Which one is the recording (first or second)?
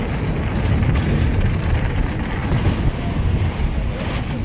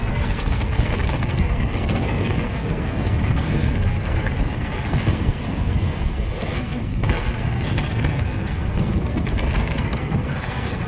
first